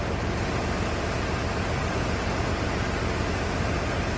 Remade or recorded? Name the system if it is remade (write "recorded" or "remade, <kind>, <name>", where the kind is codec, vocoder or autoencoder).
recorded